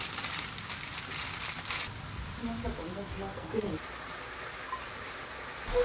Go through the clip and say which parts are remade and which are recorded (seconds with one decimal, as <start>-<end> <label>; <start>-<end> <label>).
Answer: 0.0-2.9 recorded; 2.9-3.7 remade; 3.7-5.8 recorded